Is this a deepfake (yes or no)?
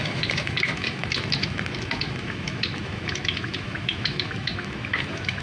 yes